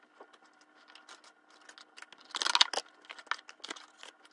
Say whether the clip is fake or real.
real